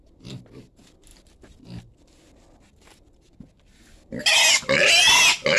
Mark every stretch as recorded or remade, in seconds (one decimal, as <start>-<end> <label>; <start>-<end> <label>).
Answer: 0.0-5.6 recorded